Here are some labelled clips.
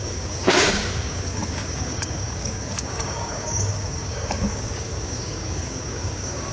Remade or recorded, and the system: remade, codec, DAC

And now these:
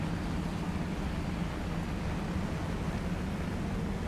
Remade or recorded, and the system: recorded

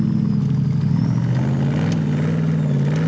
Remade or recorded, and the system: recorded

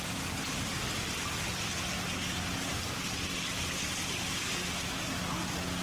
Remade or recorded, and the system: recorded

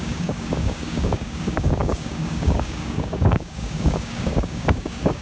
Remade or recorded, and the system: remade, codec, DAC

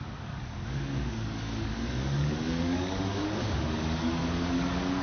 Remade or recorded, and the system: remade, codec, DAC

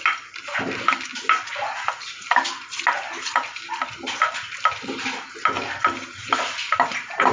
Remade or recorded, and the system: recorded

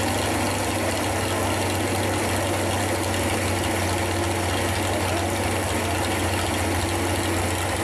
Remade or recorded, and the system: recorded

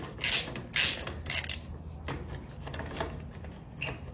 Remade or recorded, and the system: recorded